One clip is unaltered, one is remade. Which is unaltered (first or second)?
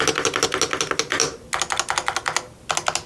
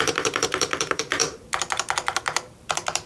first